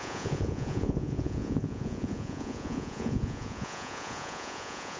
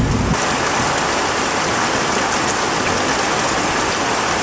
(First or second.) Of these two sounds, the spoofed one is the first